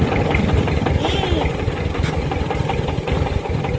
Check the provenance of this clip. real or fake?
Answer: real